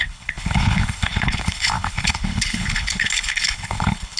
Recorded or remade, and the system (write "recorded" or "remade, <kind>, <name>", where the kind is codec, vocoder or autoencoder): remade, codec, HILCodec